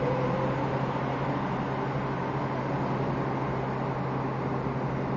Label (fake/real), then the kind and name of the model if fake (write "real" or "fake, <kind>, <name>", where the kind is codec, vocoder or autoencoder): real